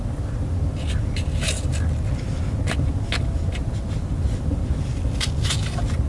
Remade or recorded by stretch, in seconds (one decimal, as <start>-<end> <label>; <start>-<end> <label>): 0.0-6.1 recorded